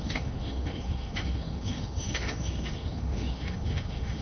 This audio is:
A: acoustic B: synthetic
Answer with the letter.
B